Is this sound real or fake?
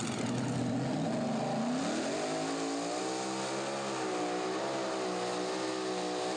real